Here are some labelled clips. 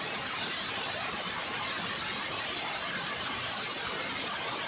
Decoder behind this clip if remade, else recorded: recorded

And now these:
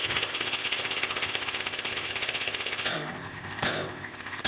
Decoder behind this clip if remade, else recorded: remade, codec, ZipCodec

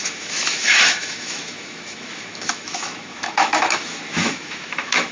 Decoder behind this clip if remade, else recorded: remade, autoencoder, DAC-VAE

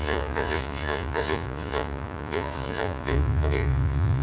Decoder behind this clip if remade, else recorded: remade, vocoder, Vocos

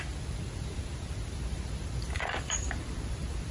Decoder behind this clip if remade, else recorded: remade, vocoder, BigVGAN v2